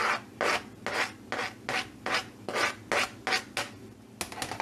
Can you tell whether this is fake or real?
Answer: real